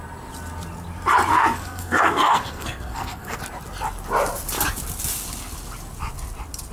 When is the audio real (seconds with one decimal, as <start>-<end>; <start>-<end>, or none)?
0.0-1.3; 3.4-6.7